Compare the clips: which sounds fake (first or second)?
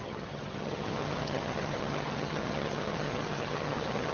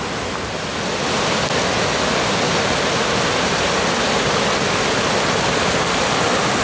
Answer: first